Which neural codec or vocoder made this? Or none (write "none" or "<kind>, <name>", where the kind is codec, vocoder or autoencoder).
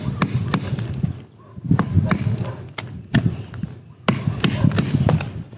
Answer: none